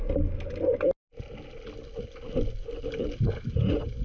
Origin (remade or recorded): recorded